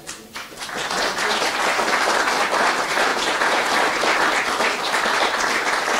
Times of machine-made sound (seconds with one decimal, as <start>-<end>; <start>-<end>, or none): 3.1-3.7